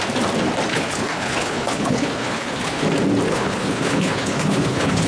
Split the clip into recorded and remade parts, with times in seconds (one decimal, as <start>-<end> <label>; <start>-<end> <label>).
0.0-0.7 recorded; 0.7-2.8 remade; 2.8-3.3 recorded; 3.3-5.1 remade

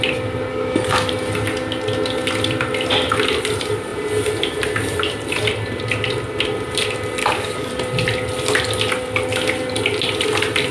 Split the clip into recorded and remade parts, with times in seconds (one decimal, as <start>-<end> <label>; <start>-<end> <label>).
0.0-0.5 recorded; 0.5-1.1 remade; 1.1-7.2 recorded; 7.2-7.7 remade; 7.7-10.7 recorded

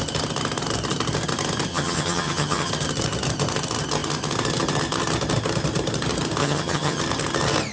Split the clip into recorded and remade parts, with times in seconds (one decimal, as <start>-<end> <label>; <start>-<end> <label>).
0.0-1.7 recorded; 1.7-2.7 remade; 2.7-6.4 recorded; 6.4-7.0 remade; 7.0-7.7 recorded

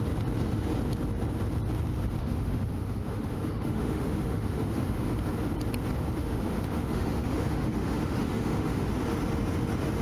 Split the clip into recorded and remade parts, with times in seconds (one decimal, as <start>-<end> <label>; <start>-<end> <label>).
0.0-2.2 recorded; 2.2-5.1 remade; 5.1-6.2 recorded; 6.2-8.9 remade; 8.9-10.0 recorded